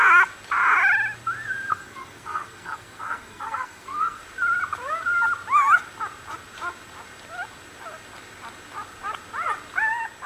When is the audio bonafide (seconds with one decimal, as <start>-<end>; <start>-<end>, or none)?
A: 0.0-1.7; 4.2-10.3